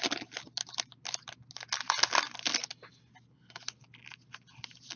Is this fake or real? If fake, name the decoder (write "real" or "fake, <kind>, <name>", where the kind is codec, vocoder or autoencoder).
real